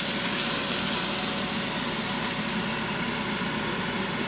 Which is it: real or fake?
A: real